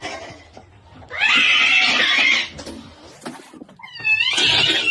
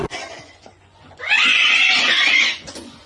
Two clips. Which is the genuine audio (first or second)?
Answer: first